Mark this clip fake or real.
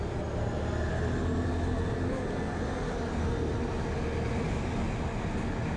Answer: real